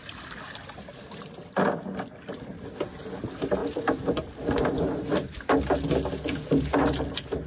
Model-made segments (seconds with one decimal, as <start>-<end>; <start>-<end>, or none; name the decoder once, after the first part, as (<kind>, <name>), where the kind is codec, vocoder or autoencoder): none